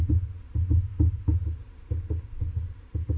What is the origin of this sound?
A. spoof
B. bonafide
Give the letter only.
A